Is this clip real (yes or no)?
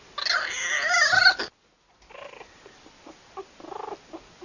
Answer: yes